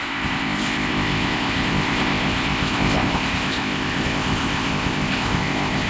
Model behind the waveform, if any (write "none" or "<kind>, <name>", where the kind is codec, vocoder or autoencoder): codec, ZipCodec